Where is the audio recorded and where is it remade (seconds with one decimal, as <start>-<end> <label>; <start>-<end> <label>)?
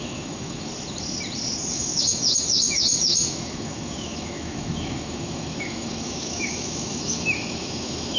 0.0-0.7 remade; 0.7-1.7 recorded; 1.7-8.2 remade